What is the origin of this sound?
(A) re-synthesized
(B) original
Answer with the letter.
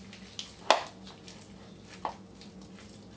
B